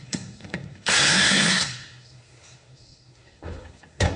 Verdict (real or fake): fake